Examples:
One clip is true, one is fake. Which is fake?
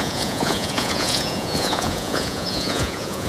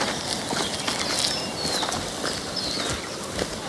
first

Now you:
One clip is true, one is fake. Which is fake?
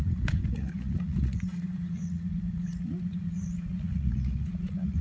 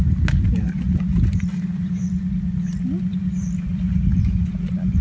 first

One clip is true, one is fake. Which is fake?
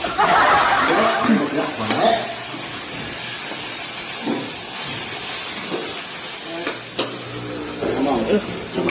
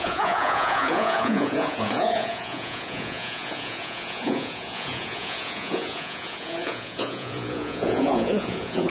second